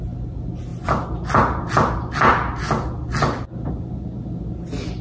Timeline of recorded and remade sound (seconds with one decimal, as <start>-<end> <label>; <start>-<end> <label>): 0.0-5.0 recorded